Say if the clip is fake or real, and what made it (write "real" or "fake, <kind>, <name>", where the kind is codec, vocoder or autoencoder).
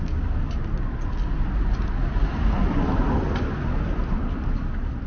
real